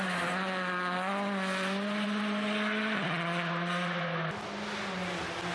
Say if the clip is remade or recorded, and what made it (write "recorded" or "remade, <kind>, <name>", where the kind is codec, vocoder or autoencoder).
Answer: recorded